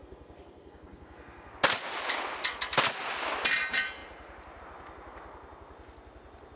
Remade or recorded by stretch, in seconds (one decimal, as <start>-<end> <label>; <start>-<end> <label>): 0.0-1.5 remade; 1.5-6.6 recorded